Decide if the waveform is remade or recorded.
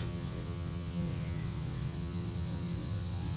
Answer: remade